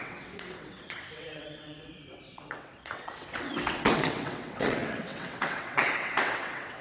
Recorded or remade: remade